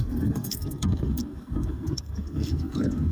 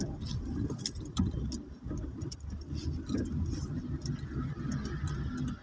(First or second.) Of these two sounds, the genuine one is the second